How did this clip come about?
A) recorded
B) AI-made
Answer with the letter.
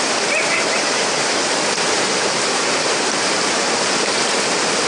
B